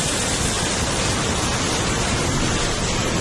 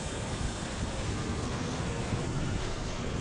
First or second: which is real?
first